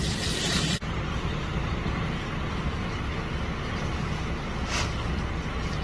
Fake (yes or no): no